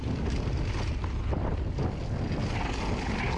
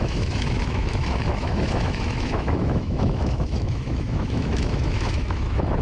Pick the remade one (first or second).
second